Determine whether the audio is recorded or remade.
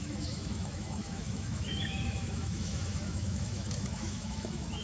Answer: remade